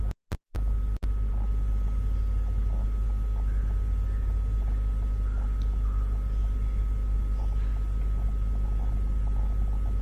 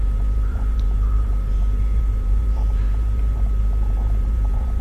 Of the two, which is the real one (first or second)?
first